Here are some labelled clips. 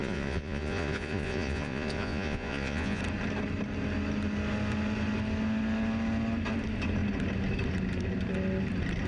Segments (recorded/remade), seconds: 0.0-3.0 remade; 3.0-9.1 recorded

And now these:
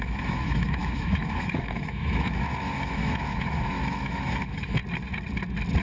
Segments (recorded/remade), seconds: 0.0-4.8 remade; 4.8-5.8 recorded

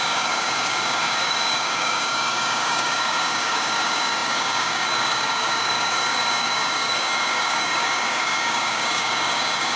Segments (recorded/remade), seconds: 0.0-9.8 remade

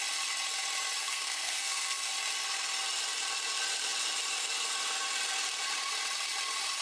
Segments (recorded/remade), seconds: 0.0-1.0 recorded; 1.0-2.1 remade; 2.1-6.8 recorded

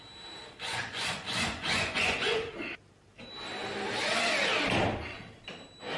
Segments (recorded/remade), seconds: 0.0-0.4 recorded; 0.4-2.5 remade; 2.5-6.0 recorded

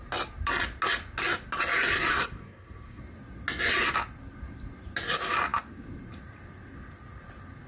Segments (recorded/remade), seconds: 0.0-2.1 recorded; 2.1-3.0 remade; 3.0-7.7 recorded

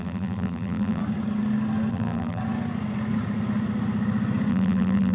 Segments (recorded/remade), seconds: 0.0-1.0 remade; 1.0-1.9 recorded; 1.9-2.4 remade; 2.4-4.5 recorded; 4.5-5.1 remade